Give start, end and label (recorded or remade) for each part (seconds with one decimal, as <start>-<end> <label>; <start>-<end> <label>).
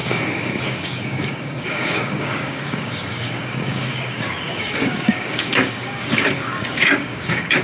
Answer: 0.0-7.6 remade